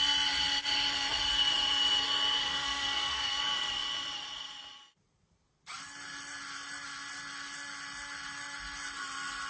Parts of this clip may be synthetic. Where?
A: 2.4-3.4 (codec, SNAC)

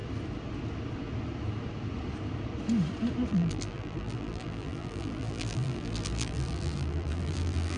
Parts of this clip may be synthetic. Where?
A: 3.3-7.8 (vocoder, BigVGAN v2)

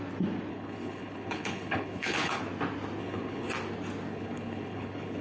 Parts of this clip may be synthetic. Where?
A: 0.5-2.4 (codec, HILCodec); 3.0-3.5; 4.1-5.2

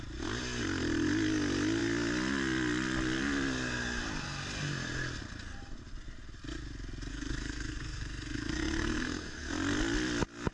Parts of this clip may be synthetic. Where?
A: 7.1-9.5 (codec, SNAC)

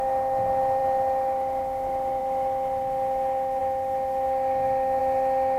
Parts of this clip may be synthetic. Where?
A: none